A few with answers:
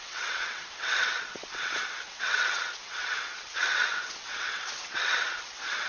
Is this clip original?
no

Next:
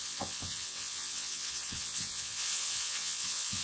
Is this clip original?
no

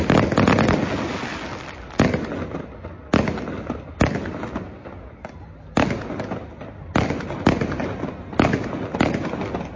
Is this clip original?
yes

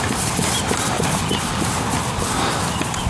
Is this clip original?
yes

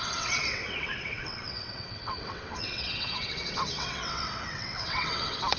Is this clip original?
no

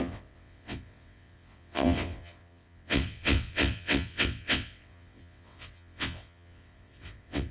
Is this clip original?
no